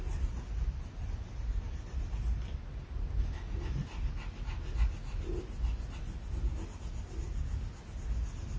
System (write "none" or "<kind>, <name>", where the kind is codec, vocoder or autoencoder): none